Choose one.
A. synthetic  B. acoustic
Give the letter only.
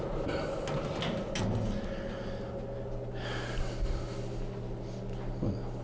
B